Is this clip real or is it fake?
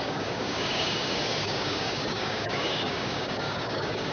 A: fake